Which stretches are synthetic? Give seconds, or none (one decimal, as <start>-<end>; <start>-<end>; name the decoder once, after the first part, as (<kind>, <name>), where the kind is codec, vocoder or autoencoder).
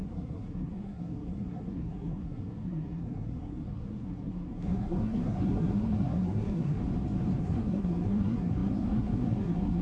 0.0-6.8 (codec, SNAC); 7.4-9.8